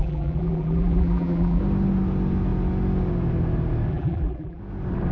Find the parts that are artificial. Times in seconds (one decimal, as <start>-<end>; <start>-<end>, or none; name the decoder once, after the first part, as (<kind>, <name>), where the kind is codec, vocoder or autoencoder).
0.0-1.6 (vocoder, BigVGAN v2); 3.9-4.6